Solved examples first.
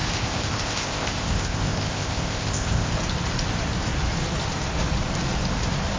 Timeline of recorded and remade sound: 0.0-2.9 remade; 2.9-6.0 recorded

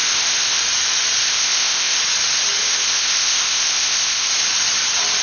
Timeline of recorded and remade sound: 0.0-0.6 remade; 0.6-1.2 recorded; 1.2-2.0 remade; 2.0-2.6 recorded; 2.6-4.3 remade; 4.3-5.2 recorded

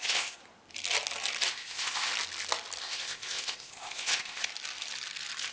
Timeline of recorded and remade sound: 0.0-0.4 remade; 0.4-1.5 recorded; 1.5-2.1 remade; 2.1-2.8 recorded; 2.8-4.5 remade; 4.5-5.5 recorded

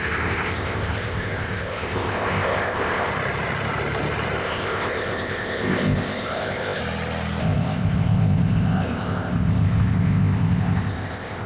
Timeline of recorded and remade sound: 0.0-3.1 remade; 3.1-4.4 recorded; 4.4-6.8 remade; 6.8-7.4 recorded; 7.4-11.5 remade

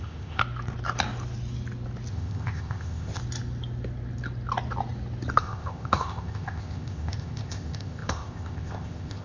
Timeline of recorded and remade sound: 0.0-0.4 remade; 0.4-2.1 recorded; 2.1-3.2 remade; 3.2-5.4 recorded; 5.4-9.2 remade

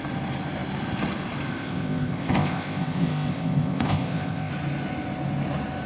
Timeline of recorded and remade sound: 0.0-1.5 recorded; 1.5-4.5 remade; 4.5-5.9 recorded